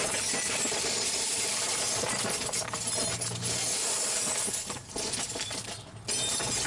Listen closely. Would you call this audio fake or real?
real